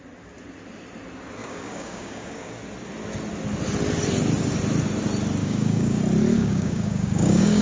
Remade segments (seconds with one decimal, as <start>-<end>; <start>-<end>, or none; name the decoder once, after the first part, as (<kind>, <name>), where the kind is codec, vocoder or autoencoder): 1.4-2.5 (codec, DAC); 5.4-6.0; 6.4-7.6